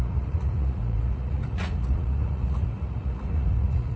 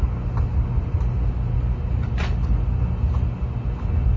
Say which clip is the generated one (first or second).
first